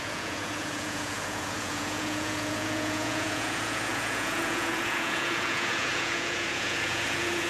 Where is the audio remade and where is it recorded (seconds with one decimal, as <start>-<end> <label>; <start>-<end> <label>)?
0.0-7.5 remade

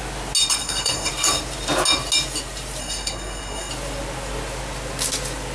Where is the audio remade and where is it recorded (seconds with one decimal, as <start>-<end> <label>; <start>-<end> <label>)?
0.0-0.6 recorded; 0.6-1.1 remade; 1.1-2.8 recorded; 2.8-3.7 remade; 3.7-5.5 recorded

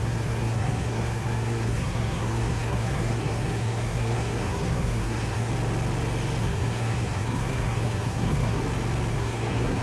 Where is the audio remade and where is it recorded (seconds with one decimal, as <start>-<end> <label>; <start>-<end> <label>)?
0.0-5.5 remade; 5.5-6.4 recorded; 6.4-8.6 remade; 8.6-9.1 recorded; 9.1-9.8 remade

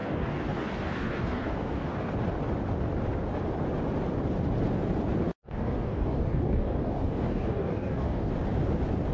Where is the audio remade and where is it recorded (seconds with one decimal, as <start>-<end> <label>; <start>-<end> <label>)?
0.0-2.1 remade; 2.1-5.3 recorded; 5.3-8.3 remade; 8.3-9.1 recorded

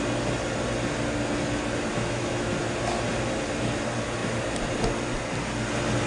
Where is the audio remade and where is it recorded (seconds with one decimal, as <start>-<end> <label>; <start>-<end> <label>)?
0.0-1.9 recorded; 1.9-2.5 remade; 2.5-6.1 recorded

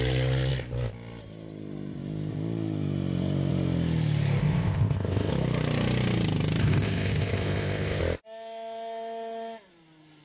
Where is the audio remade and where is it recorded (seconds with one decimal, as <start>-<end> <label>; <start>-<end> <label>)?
0.0-4.4 recorded; 4.4-5.3 remade; 5.3-6.6 recorded; 6.6-8.0 remade; 8.0-10.2 recorded

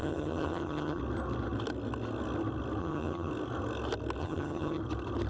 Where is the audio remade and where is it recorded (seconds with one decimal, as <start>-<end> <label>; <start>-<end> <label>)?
0.0-1.0 remade; 1.0-2.8 recorded; 2.8-3.3 remade; 3.3-4.2 recorded; 4.2-4.8 remade; 4.8-5.3 recorded